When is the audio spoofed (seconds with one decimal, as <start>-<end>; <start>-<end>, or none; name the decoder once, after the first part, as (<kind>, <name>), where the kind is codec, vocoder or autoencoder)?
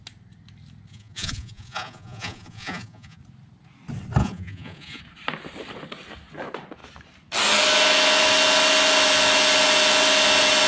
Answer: 0.9-3.2 (vocoder, Vocos); 4.2-5.0